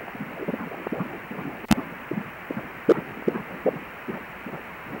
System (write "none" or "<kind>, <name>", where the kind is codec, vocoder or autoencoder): none